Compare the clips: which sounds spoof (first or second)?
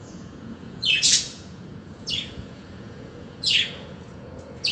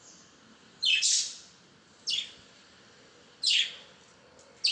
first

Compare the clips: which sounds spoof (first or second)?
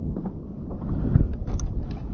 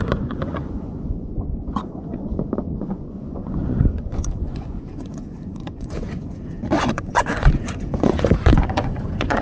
second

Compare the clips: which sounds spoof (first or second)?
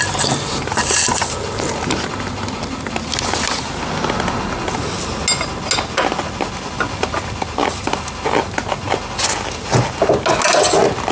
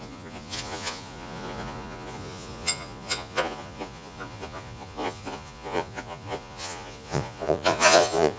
second